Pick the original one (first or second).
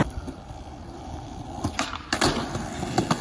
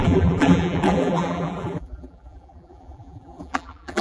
first